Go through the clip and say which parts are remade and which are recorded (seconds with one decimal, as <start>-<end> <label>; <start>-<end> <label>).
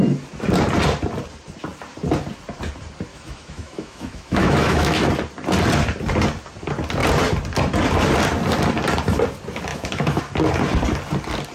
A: 0.0-3.1 recorded; 3.1-5.1 remade; 5.1-9.7 recorded; 9.7-10.2 remade; 10.2-11.5 recorded